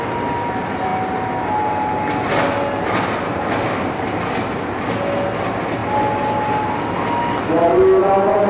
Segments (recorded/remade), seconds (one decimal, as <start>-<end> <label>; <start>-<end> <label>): 0.0-8.5 recorded